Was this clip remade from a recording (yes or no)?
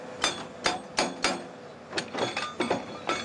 no